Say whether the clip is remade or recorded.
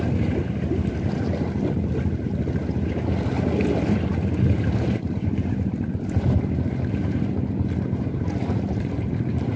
recorded